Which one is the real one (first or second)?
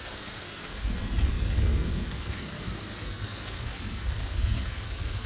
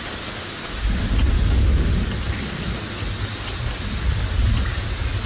second